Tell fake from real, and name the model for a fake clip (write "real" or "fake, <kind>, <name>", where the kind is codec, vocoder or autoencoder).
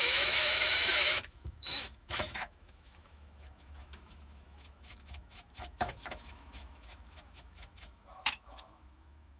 fake, autoencoder, DAC-VAE